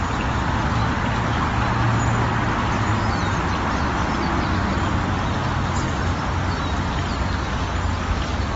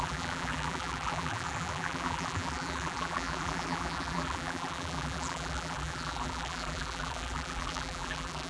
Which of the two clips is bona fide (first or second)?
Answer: first